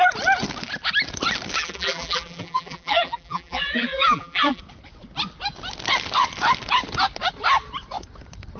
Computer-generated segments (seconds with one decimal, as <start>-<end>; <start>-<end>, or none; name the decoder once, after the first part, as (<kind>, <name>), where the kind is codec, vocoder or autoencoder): 1.6-4.6 (vocoder, BigVGAN v2)